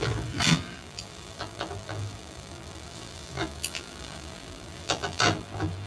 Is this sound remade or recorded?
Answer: remade